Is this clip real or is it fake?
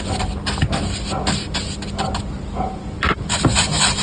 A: real